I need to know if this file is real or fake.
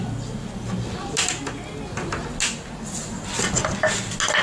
real